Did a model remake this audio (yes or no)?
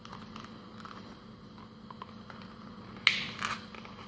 no